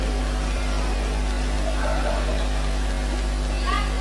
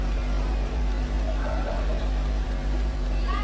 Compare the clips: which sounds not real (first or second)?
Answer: second